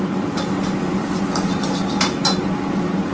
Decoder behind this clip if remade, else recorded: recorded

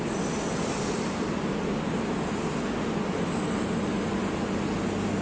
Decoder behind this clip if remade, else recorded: recorded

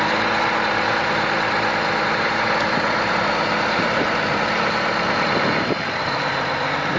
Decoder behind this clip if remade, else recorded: remade, vocoder, BigVGAN v2